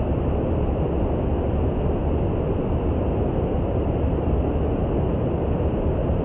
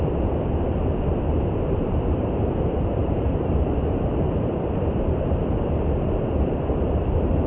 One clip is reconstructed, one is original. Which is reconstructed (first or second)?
second